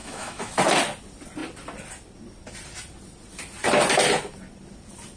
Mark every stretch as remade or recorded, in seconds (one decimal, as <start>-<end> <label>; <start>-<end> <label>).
0.0-0.5 remade; 0.5-5.2 recorded